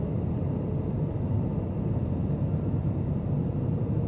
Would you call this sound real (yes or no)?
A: yes